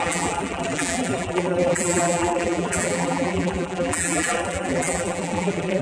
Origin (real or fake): fake